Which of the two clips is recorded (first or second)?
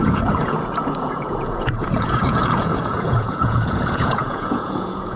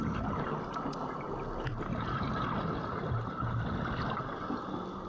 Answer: second